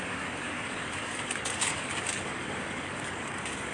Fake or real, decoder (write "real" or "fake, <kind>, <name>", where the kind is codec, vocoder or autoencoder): fake, codec, DAC